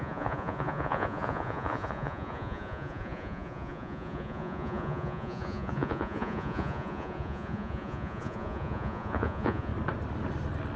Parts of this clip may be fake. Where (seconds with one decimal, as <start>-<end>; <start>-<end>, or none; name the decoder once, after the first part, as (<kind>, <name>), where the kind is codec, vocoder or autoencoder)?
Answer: 0.0-9.7 (vocoder, Vocos)